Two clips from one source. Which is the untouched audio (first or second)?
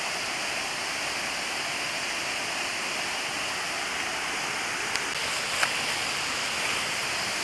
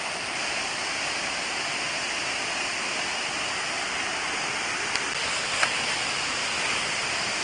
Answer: first